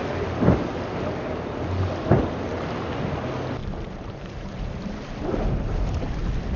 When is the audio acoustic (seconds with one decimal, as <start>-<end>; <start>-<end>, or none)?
0.0-3.6; 6.1-6.6